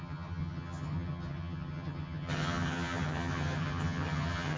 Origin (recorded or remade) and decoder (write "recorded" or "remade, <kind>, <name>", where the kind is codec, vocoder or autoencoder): remade, vocoder, HiFi-GAN